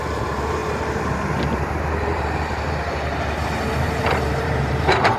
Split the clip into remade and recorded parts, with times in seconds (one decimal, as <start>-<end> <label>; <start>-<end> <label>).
0.0-5.2 remade

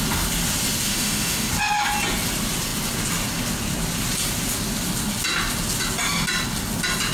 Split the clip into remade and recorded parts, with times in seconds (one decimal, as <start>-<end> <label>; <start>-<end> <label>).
0.0-0.9 recorded; 0.9-1.5 remade; 1.5-7.1 recorded

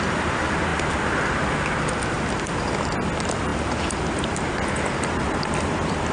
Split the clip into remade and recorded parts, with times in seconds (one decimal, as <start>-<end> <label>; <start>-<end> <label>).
0.0-6.1 recorded

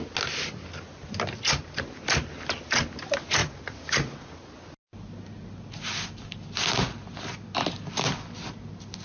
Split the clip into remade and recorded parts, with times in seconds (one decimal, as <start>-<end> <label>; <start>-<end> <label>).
0.0-3.4 recorded; 3.4-4.5 remade; 4.5-9.0 recorded

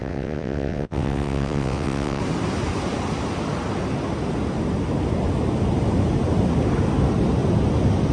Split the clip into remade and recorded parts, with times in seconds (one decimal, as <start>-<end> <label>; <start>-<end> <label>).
0.0-2.2 remade; 2.2-8.1 recorded